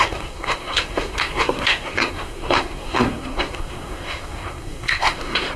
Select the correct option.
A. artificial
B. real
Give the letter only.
A